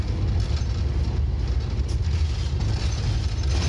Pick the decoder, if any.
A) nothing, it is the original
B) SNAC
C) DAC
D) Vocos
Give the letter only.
A